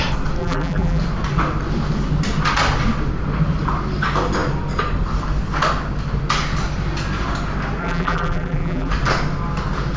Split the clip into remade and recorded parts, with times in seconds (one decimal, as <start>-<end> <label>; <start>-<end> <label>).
0.0-0.4 recorded; 0.4-1.0 remade; 1.0-7.8 recorded; 7.8-8.9 remade; 8.9-10.0 recorded

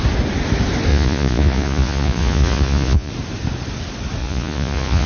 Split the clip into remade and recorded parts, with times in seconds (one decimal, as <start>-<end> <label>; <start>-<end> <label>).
0.0-0.9 recorded; 0.9-3.1 remade; 3.1-4.2 recorded; 4.2-5.1 remade

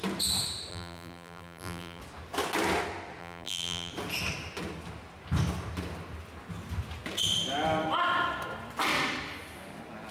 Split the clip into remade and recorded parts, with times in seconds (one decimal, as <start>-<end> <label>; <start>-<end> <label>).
0.0-0.7 recorded; 0.7-2.0 remade; 2.0-3.2 recorded; 3.2-3.9 remade; 3.9-10.1 recorded

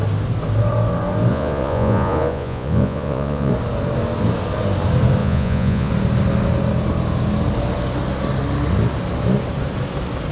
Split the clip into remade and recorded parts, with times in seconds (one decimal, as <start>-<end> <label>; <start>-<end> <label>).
0.0-1.3 recorded; 1.3-3.5 remade; 3.5-5.2 recorded; 5.2-5.9 remade; 5.9-10.3 recorded